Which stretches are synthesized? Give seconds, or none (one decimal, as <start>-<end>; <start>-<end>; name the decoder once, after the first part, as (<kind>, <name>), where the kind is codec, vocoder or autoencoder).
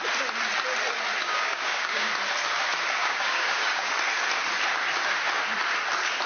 1.2-2.1 (codec, DAC); 3.0-3.9